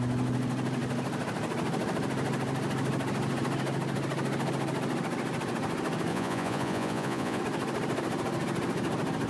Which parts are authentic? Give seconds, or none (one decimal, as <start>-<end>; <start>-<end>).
0.0-6.1; 7.4-9.3